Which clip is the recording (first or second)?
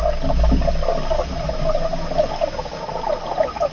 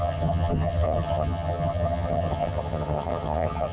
first